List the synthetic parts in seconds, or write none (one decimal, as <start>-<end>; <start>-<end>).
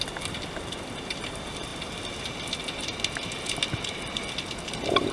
none